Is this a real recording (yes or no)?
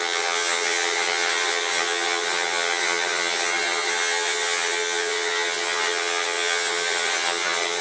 no